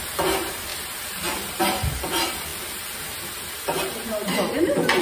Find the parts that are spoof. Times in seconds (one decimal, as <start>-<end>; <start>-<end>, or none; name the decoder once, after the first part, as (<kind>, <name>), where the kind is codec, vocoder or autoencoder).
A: 0.0-5.0 (vocoder, BigVGAN v2)